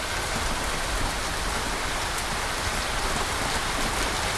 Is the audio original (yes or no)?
yes